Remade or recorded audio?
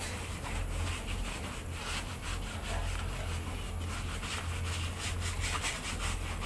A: recorded